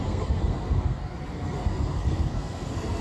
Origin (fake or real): fake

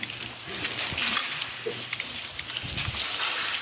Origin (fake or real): fake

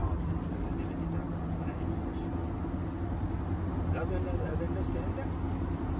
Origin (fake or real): real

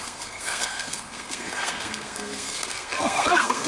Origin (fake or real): fake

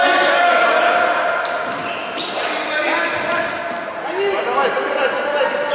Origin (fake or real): real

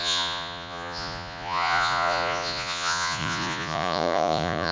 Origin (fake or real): fake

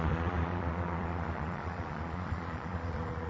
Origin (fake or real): fake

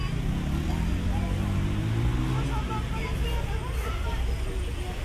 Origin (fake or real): real